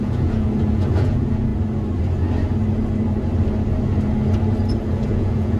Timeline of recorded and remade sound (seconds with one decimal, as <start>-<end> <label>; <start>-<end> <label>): 0.0-1.5 remade; 1.5-4.9 recorded; 4.9-5.6 remade